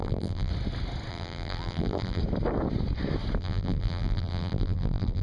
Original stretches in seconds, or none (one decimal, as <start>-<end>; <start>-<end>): 0.5-1.1; 2.2-3.4